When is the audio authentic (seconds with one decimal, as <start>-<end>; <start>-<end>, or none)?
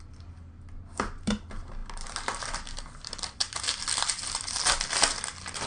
0.0-5.7